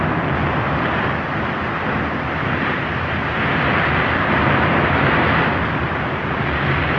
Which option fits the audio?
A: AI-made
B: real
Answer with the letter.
B